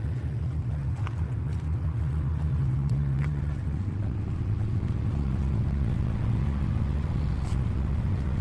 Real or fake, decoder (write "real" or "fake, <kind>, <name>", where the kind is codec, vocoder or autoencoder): fake, vocoder, WaveNeXt